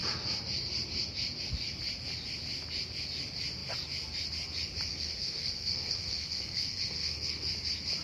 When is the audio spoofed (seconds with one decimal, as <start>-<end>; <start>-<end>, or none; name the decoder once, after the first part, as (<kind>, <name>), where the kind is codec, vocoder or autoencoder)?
4.9-7.5 (codec, SNAC)